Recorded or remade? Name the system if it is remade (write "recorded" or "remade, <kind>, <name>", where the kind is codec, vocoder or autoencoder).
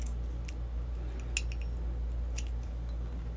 recorded